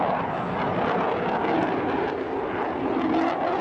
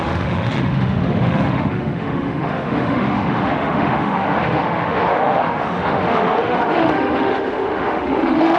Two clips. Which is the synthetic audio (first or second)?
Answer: second